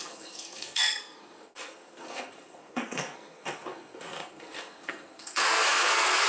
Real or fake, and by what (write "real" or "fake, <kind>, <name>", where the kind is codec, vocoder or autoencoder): fake, codec, SNAC